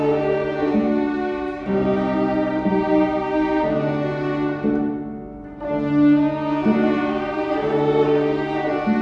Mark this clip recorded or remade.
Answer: recorded